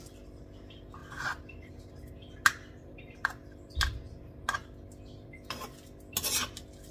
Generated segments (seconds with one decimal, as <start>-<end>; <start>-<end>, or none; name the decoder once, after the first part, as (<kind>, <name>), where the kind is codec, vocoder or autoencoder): none